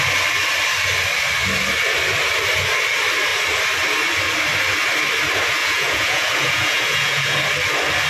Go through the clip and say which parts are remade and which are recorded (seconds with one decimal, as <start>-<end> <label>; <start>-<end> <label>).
0.0-5.6 recorded; 5.6-7.4 remade; 7.4-8.1 recorded